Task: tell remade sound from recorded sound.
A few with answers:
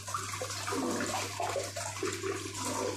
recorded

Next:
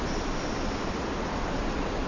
recorded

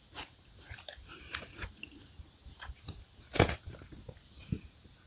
recorded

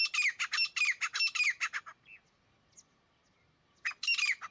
recorded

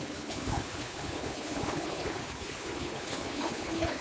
remade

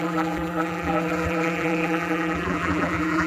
remade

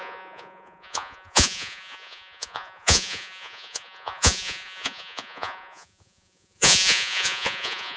remade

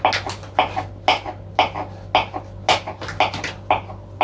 recorded